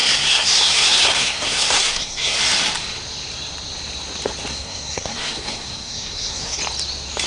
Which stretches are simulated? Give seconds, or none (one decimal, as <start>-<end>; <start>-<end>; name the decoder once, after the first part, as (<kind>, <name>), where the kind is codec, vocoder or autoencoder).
0.0-2.4 (codec, SNAC); 4.5-6.6